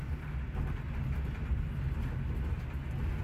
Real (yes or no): yes